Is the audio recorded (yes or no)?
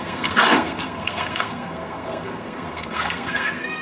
no